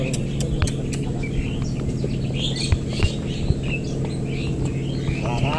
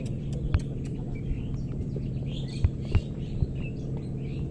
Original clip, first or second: first